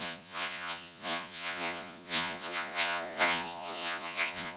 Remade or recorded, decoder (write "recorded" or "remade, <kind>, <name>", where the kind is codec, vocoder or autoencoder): remade, vocoder, Vocos